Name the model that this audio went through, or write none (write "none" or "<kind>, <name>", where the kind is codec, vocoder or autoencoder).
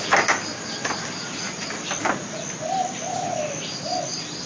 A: none